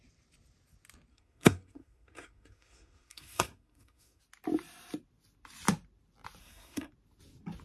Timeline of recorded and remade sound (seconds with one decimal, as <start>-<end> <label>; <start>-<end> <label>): 0.0-1.1 recorded; 1.1-4.2 remade; 4.2-6.4 recorded; 6.4-6.9 remade; 6.9-7.6 recorded